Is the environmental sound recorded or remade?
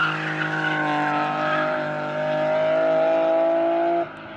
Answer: recorded